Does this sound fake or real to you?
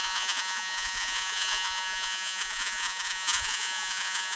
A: fake